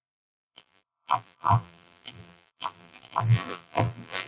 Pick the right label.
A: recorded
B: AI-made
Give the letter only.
B